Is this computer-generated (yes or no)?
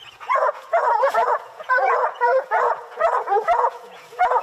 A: yes